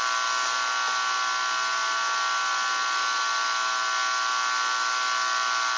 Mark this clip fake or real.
real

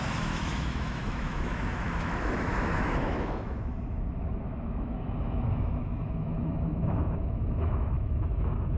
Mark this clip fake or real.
fake